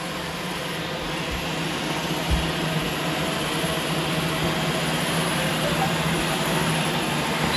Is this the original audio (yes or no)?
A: yes